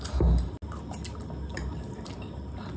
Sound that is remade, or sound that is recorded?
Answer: recorded